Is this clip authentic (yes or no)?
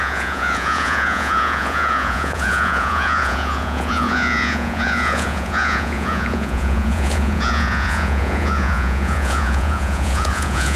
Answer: no